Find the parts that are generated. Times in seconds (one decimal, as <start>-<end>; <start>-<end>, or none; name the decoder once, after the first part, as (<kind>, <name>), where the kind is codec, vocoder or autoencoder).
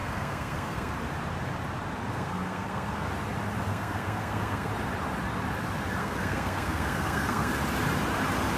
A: 0.0-0.9 (codec, SNAC); 2.1-3.1; 3.7-4.7; 6.0-7.5